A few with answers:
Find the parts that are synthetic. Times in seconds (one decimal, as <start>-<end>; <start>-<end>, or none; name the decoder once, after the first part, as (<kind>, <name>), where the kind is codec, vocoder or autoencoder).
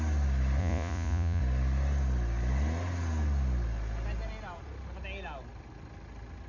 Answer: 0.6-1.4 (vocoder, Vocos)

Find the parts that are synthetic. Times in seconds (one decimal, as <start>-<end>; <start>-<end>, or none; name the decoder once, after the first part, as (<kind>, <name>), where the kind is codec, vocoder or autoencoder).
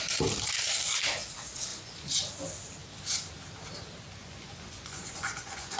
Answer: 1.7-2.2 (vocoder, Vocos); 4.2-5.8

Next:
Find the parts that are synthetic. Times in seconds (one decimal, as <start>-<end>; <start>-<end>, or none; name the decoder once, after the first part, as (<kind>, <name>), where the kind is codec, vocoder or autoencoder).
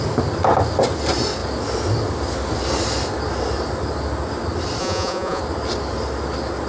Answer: 4.8-5.4 (vocoder, Vocos)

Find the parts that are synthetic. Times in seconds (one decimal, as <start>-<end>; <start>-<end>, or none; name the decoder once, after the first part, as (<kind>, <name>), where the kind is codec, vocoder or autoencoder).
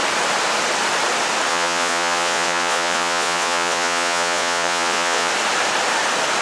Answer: 1.5-5.3 (vocoder, Vocos)